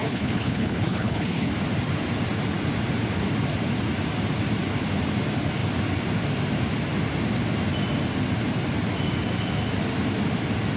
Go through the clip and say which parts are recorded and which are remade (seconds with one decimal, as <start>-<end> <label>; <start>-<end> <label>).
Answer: 0.0-1.5 remade; 1.5-10.8 recorded